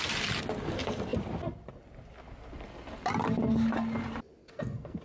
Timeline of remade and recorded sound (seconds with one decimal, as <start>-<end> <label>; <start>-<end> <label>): 0.0-4.4 recorded; 4.4-5.0 remade